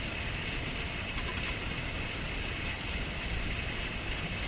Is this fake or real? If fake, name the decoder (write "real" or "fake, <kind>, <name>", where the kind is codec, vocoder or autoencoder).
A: real